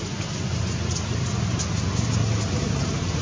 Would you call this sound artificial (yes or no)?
no